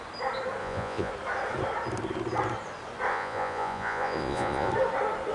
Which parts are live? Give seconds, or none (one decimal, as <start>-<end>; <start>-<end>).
0.0-0.6; 1.1-3.1; 4.7-5.3